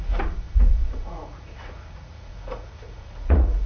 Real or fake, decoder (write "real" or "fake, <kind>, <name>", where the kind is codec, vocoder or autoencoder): fake, vocoder, Vocos